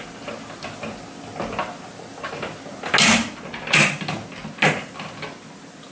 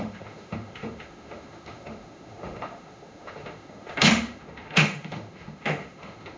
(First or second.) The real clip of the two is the first